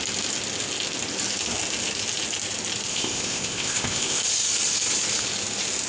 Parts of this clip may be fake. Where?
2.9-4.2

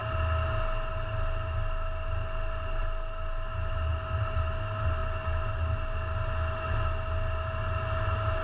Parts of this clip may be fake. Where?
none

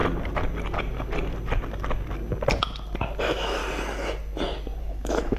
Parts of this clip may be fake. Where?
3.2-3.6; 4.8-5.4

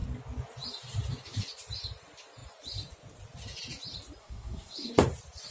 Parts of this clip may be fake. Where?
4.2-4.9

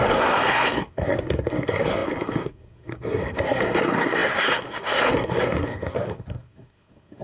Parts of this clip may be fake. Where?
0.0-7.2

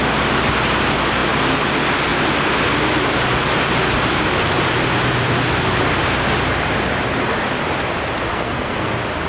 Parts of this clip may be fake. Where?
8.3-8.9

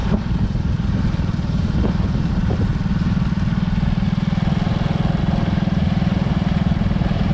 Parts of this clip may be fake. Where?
0.0-2.7; 5.2-7.3

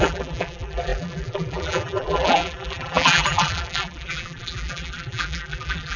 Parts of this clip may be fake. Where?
0.0-6.0